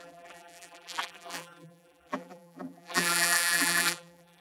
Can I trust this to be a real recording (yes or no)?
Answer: no